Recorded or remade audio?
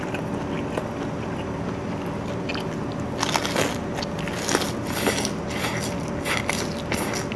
recorded